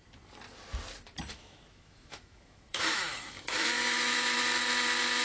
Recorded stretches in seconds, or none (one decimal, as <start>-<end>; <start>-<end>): 0.0-1.3; 4.4-5.2